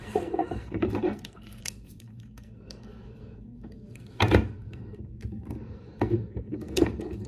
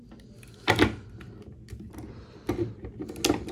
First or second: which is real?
second